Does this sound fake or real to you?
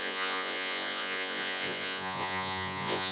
fake